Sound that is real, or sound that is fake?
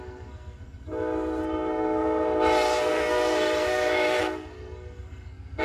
fake